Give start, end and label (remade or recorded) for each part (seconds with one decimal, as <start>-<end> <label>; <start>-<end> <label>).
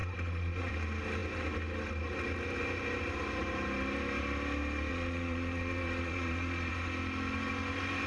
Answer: 0.0-0.7 remade; 0.7-4.9 recorded; 4.9-6.7 remade; 6.7-8.1 recorded